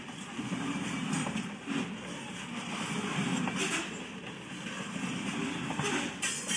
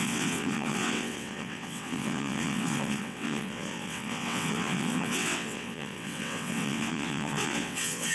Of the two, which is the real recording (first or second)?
first